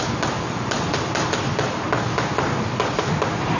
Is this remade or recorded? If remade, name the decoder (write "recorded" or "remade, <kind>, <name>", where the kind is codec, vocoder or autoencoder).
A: recorded